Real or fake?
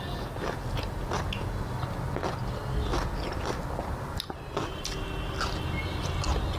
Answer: real